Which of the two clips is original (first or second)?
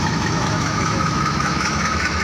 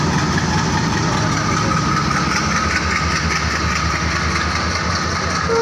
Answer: second